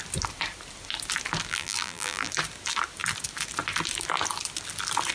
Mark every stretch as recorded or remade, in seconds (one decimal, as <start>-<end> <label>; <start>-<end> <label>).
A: 0.0-1.5 recorded; 1.5-2.3 remade; 2.3-5.1 recorded